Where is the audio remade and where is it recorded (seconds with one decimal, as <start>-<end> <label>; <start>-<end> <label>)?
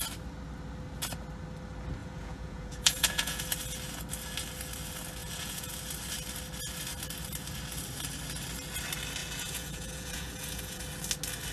0.0-2.0 recorded; 2.0-3.4 remade; 3.4-5.2 recorded; 5.2-5.8 remade; 5.8-9.2 recorded; 9.2-10.8 remade; 10.8-11.5 recorded